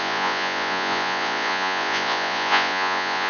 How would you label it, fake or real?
fake